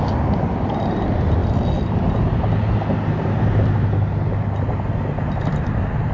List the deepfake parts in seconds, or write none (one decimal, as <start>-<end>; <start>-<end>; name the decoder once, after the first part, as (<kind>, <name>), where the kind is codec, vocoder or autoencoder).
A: none